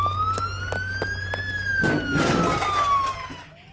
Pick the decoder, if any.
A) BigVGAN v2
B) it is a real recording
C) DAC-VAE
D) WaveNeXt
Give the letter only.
B